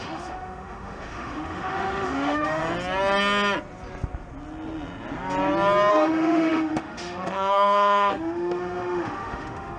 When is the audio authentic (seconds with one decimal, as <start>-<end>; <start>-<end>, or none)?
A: 2.6-5.9